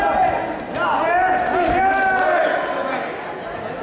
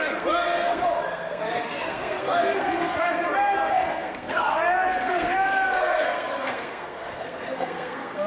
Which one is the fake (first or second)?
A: second